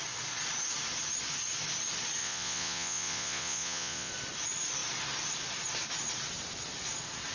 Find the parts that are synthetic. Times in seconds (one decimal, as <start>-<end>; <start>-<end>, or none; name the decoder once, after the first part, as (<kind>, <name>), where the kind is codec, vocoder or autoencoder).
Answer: 2.2-4.1 (vocoder, Vocos)